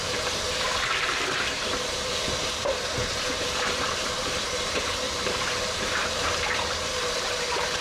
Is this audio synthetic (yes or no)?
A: yes